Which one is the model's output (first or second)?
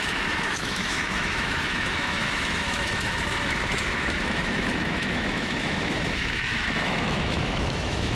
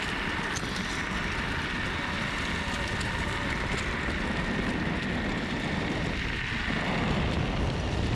first